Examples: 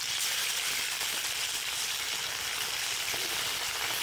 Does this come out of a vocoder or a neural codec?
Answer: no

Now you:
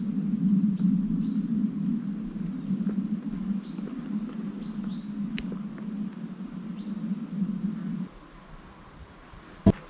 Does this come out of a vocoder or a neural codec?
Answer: no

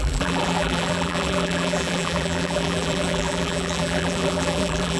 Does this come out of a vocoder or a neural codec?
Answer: yes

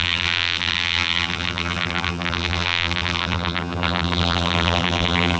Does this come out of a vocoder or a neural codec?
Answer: yes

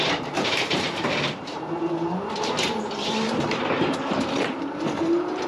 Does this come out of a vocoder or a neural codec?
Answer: yes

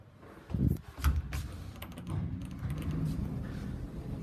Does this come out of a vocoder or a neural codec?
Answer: no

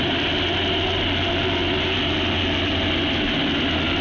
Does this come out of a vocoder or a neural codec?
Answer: no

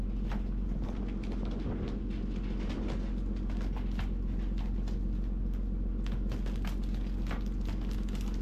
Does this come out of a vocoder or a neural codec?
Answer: no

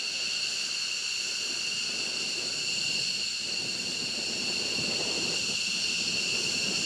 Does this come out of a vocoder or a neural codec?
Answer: no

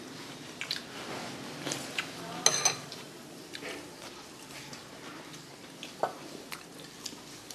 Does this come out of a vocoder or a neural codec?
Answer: no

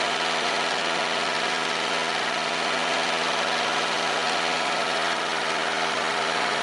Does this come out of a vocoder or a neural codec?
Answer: no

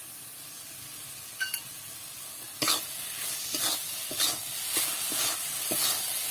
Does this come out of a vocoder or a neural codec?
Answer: no